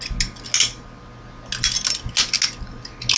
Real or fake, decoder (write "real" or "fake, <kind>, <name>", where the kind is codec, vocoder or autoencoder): real